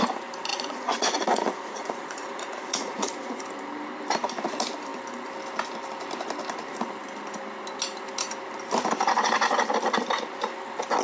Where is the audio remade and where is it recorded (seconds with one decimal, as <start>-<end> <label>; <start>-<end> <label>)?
0.0-0.5 recorded; 0.5-3.4 remade; 3.4-11.0 recorded